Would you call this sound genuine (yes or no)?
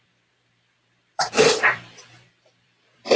no